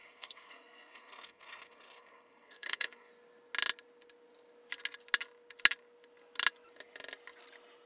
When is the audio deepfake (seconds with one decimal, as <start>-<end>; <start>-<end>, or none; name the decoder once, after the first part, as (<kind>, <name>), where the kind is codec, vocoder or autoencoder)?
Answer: 0.0-3.1 (codec, SNAC)

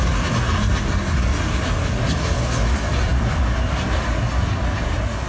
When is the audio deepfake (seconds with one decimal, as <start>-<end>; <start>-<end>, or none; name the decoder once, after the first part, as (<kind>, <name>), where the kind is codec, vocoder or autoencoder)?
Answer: none